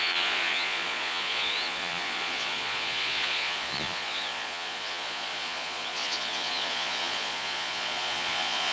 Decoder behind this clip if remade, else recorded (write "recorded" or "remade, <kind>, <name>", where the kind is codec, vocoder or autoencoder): remade, vocoder, Vocos